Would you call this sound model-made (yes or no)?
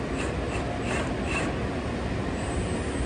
no